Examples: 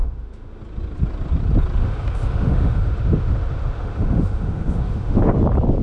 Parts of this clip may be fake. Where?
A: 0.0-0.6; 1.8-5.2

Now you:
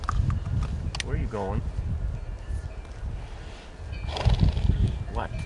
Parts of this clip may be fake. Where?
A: none